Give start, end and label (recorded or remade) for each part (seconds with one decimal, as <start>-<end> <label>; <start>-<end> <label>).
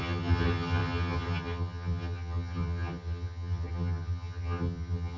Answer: 0.0-5.2 remade